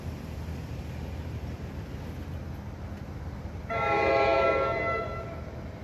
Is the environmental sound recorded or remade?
recorded